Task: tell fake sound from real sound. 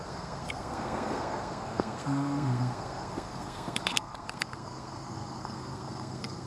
fake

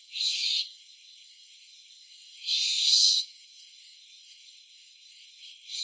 fake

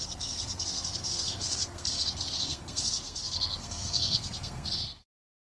fake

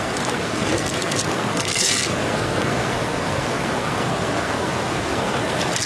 fake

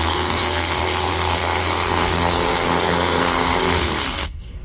fake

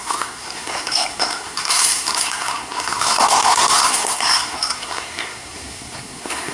fake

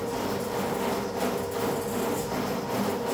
real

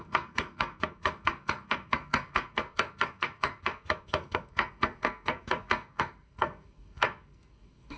fake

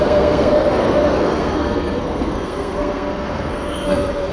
fake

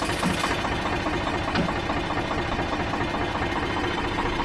real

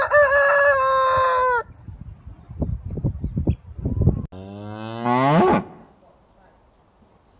real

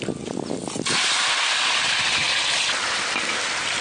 real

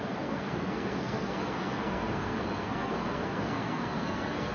fake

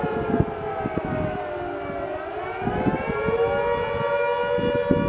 real